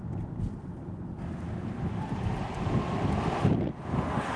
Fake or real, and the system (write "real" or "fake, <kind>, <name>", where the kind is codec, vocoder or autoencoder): real